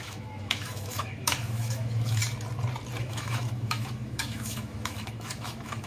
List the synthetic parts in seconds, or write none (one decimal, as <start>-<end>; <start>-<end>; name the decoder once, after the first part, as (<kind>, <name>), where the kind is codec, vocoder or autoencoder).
0.0-2.2 (autoencoder, DAC-VAE); 3.0-5.9